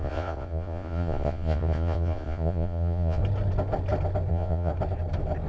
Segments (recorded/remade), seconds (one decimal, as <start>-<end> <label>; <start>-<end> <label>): 0.0-3.2 remade; 3.2-4.3 recorded; 4.3-4.7 remade; 4.7-5.5 recorded